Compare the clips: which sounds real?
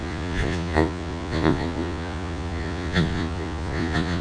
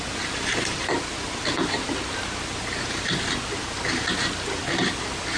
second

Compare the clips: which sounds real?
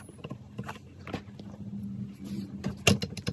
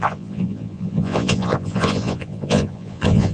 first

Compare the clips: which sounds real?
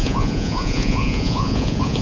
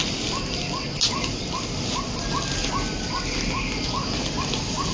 second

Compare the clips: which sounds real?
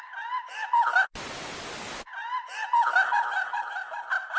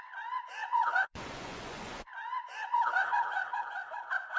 first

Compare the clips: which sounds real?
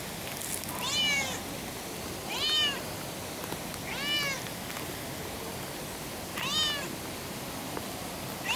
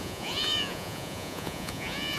first